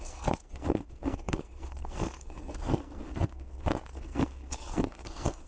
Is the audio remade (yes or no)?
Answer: yes